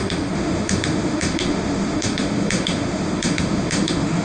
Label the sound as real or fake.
fake